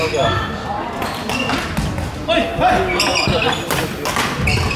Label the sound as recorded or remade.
recorded